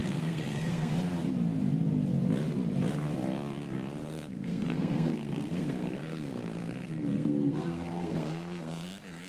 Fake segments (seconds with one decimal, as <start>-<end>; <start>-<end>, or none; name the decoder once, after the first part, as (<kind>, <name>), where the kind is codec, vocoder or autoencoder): 0.0-0.9 (codec, SNAC); 4.0-9.3